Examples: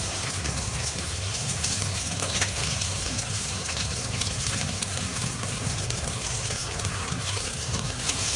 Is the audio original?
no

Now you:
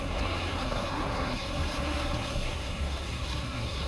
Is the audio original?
no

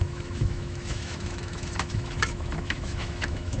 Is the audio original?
no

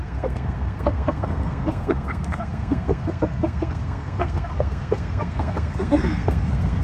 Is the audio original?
no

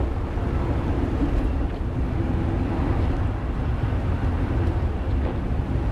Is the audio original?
yes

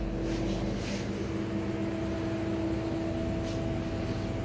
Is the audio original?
yes